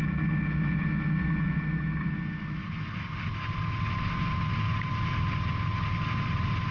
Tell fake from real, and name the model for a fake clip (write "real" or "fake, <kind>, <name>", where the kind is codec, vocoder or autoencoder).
real